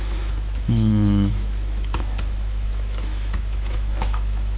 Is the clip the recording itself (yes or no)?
no